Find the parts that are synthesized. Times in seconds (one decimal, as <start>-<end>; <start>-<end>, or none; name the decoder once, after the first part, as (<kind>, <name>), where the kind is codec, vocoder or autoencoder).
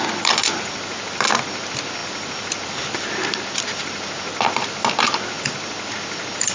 none